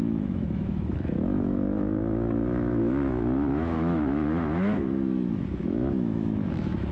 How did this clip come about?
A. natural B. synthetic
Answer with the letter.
B